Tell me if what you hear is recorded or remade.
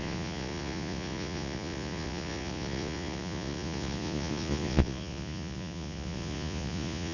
remade